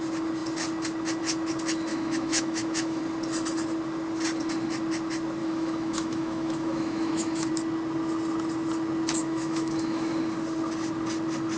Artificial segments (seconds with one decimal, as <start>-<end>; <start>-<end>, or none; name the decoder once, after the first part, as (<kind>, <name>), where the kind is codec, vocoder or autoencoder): 1.9-3.0 (autoencoder, DAC-VAE); 5.4-7.5; 9.2-10.1